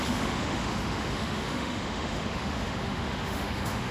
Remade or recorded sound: remade